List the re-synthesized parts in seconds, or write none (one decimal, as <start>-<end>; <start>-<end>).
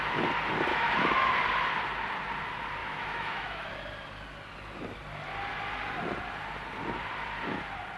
0.7-1.3; 2.8-3.7